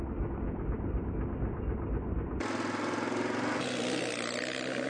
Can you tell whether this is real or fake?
real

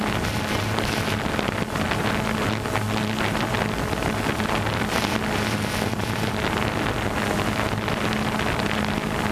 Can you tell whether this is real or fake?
real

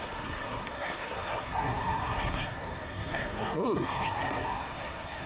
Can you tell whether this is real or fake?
fake